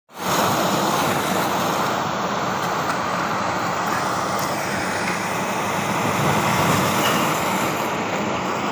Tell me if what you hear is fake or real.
real